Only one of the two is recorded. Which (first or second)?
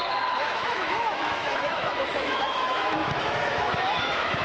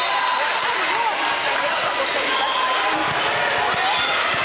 second